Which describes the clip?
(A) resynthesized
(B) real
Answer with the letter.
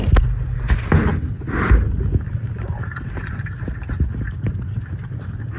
B